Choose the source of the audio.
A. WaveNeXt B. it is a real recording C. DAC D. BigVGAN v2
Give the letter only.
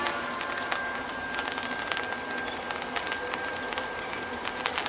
B